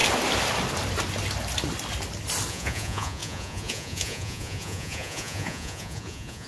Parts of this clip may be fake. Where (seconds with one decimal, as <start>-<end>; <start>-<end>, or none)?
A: 2.5-6.5